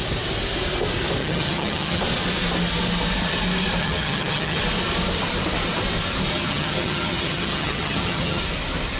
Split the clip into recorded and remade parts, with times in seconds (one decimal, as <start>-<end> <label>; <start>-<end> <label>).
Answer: 0.0-1.2 recorded; 1.2-2.0 remade; 2.0-3.8 recorded; 3.8-4.6 remade; 4.6-6.3 recorded; 6.3-8.4 remade; 8.4-9.0 recorded

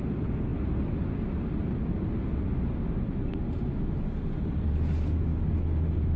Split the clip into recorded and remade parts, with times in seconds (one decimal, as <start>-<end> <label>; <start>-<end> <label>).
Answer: 0.0-6.2 recorded

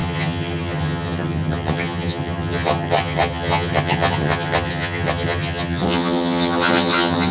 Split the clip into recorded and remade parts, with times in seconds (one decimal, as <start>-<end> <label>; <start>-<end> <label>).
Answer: 0.0-7.3 remade